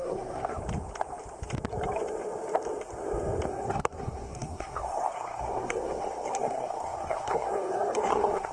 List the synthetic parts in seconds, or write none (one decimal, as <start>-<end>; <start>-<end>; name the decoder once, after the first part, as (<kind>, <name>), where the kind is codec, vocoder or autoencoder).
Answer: 0.0-0.6 (codec, SNAC); 3.5-8.5